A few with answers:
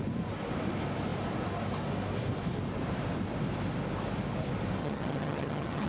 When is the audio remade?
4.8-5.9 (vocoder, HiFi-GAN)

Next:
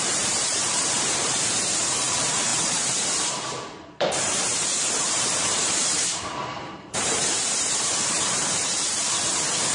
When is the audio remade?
0.0-9.7 (vocoder, BigVGAN v2)

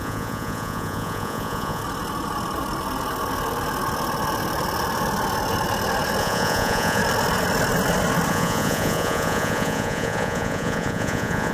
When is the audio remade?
0.0-1.8 (vocoder, Vocos); 6.2-7.0; 8.3-11.5

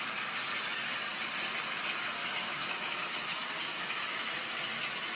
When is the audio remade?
2.2-3.2 (autoencoder, DAC-VAE); 3.7-4.6